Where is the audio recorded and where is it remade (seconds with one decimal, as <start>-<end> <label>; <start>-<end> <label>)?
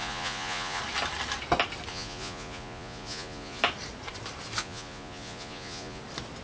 0.0-0.8 remade; 0.8-1.9 recorded; 1.9-3.6 remade; 3.6-4.6 recorded; 4.6-6.0 remade; 6.0-6.4 recorded